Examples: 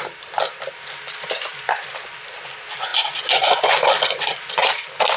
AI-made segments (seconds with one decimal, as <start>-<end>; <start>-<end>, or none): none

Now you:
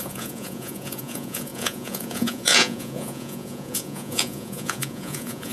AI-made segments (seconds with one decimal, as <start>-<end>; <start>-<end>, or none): 0.0-5.5

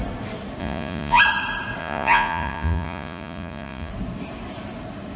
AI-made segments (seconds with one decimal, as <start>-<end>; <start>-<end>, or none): 0.6-1.2; 1.8-3.9

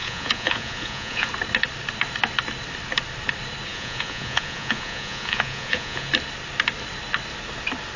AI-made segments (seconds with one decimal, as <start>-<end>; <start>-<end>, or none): 0.0-1.3; 3.7-6.1

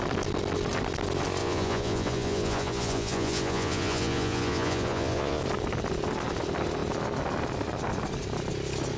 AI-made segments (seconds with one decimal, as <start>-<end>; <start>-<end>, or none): 1.4-5.4

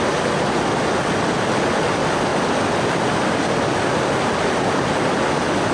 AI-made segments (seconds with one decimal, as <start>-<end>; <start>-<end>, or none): none

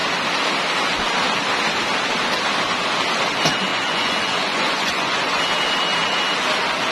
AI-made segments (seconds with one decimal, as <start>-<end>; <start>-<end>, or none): 3.7-5.4